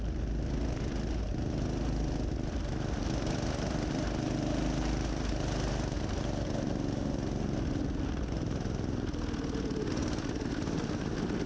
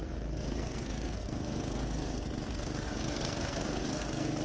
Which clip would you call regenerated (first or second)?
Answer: second